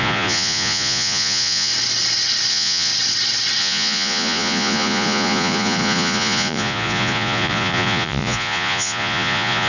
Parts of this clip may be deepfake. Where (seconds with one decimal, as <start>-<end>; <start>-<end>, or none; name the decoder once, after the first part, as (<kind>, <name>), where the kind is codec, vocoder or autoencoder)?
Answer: 0.0-1.7 (vocoder, Vocos); 2.5-2.9; 3.6-9.7